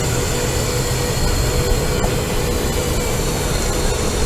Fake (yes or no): no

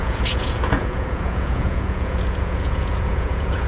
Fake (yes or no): yes